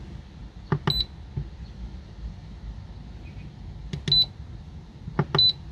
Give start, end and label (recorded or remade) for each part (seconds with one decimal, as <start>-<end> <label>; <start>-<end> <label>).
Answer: 0.0-5.7 recorded